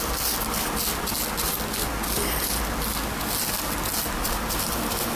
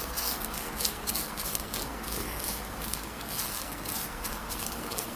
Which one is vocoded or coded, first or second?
second